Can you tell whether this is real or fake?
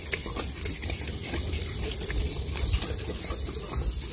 real